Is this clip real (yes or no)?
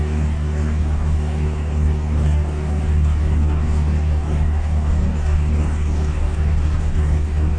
no